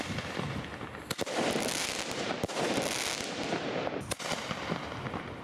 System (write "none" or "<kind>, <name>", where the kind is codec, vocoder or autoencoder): none